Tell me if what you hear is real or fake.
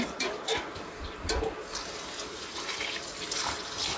real